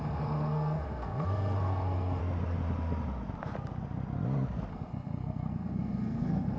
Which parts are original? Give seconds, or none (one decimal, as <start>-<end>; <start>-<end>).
2.2-4.7